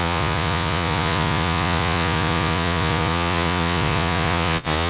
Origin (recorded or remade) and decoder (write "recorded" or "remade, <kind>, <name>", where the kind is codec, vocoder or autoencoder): remade, vocoder, Vocos